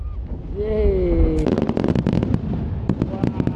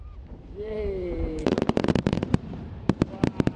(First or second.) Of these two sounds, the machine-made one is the second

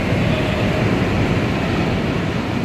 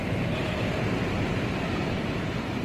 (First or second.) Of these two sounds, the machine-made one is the second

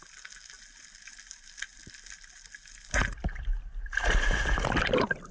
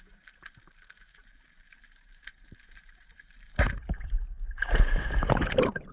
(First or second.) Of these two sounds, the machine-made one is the second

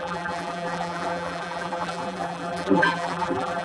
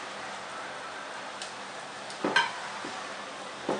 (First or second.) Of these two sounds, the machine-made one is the first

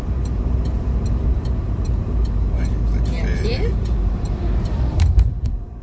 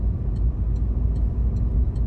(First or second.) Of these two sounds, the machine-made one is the first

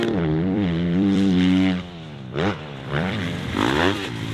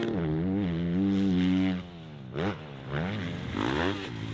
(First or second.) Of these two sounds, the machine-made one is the first